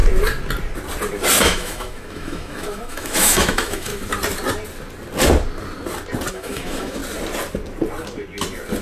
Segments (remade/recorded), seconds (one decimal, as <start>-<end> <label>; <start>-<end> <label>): 0.0-1.4 recorded; 1.4-3.9 remade; 3.9-6.3 recorded; 6.3-7.0 remade; 7.0-8.8 recorded